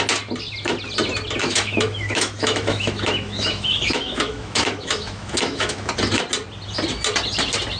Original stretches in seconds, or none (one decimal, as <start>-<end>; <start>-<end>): 0.0-1.4; 5.9-7.8

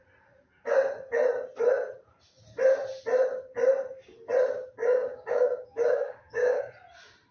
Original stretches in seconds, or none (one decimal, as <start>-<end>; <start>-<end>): 0.0-4.8; 6.7-7.3

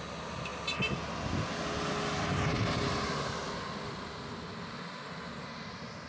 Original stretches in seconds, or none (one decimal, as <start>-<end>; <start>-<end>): 0.0-6.1

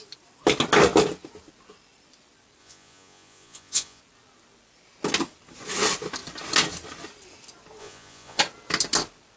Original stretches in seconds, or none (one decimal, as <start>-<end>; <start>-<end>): 0.0-2.6; 4.0-7.8; 8.4-9.4

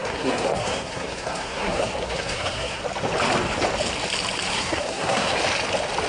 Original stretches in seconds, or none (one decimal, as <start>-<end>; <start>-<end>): 2.8-4.5; 5.4-6.1